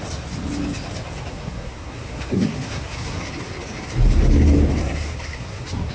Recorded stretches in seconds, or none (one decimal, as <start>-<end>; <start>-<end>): 0.0-1.3; 3.3-4.8